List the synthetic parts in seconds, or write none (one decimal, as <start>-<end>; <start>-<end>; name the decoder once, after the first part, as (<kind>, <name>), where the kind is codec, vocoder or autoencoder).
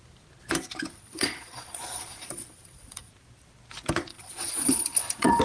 0.9-3.1 (vocoder, Vocos); 4.1-5.4